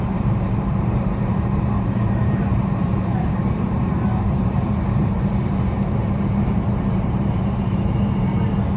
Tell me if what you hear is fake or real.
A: fake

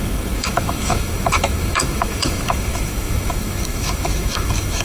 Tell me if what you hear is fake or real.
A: fake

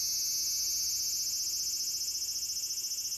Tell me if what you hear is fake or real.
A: real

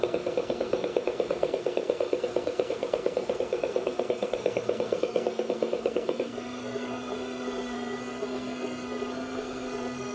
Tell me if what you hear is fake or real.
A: fake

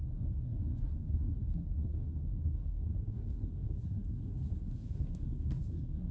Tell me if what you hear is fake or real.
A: fake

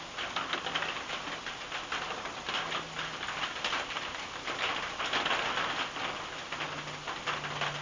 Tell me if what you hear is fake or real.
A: real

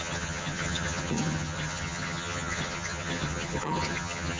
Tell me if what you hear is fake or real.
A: fake